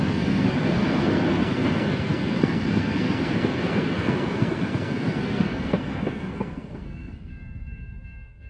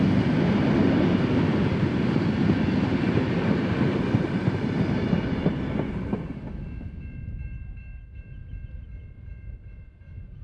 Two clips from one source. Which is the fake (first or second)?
first